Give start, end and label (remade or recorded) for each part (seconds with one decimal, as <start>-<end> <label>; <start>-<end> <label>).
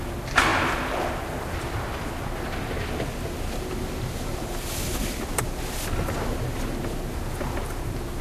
0.0-8.2 recorded